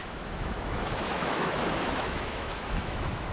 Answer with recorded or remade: remade